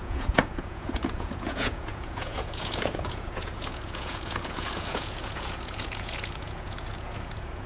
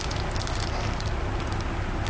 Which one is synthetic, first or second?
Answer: first